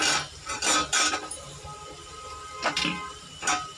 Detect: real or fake real